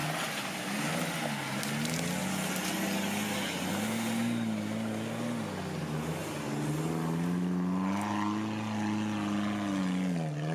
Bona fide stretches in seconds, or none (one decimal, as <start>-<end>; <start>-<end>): 0.0-10.5